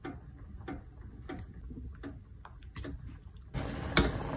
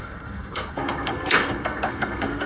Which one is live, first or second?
first